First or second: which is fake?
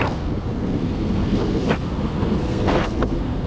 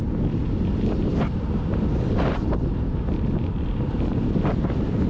first